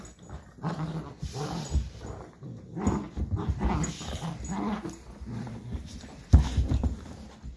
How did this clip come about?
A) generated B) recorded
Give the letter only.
B